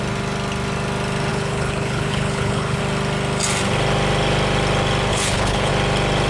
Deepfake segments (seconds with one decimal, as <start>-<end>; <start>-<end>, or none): 1.3-2.8; 5.1-5.7